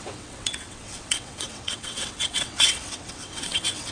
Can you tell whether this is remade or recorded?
remade